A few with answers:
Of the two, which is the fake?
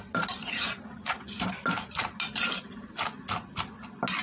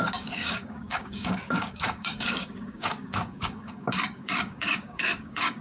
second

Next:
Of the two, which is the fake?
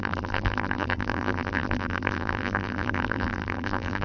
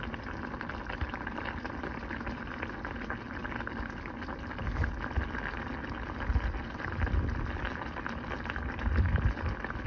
first